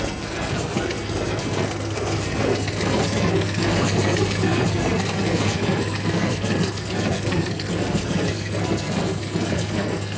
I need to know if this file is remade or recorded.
remade